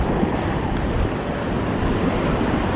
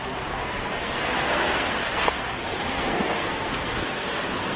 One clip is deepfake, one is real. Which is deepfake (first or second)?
second